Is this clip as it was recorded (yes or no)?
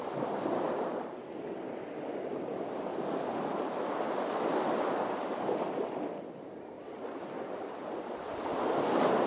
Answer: yes